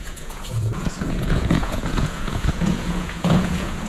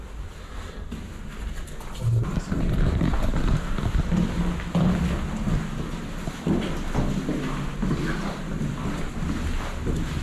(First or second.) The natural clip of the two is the second